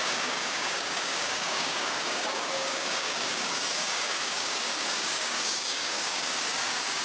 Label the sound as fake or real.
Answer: fake